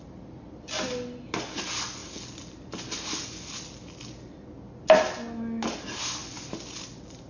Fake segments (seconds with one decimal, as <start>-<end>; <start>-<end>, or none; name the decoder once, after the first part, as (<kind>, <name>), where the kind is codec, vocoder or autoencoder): none